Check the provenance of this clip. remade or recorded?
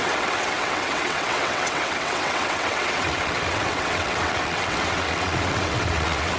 remade